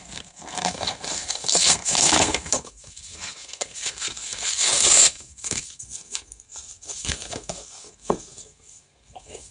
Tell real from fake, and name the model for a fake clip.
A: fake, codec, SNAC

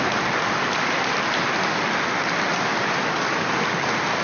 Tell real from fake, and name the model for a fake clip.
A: real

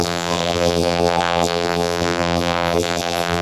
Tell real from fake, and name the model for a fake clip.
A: fake, vocoder, BigVGAN v2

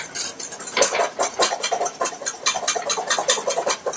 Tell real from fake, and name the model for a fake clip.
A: real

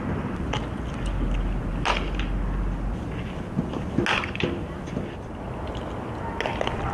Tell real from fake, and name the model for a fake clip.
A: real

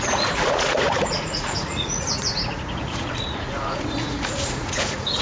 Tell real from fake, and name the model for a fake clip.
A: fake, vocoder, Vocos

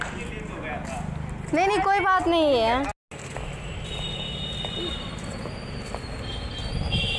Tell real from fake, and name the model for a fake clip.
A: real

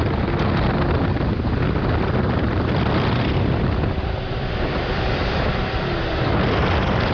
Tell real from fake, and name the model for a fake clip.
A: fake, vocoder, BigVGAN v2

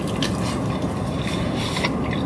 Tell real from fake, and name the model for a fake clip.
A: real